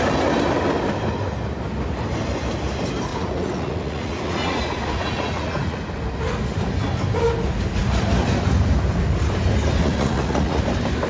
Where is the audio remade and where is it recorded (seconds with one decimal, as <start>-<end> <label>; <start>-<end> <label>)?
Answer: 0.0-3.1 recorded; 3.1-5.8 remade; 5.8-9.8 recorded; 9.8-10.6 remade; 10.6-11.1 recorded